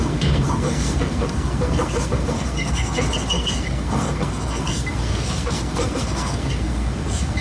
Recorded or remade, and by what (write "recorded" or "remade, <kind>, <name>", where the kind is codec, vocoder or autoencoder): remade, codec, SNAC